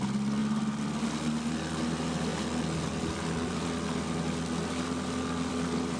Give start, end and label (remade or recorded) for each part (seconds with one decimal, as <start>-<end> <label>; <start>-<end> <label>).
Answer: 0.0-0.4 recorded; 0.4-1.0 remade; 1.0-6.0 recorded